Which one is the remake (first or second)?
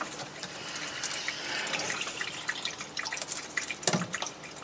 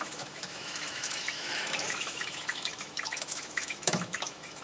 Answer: second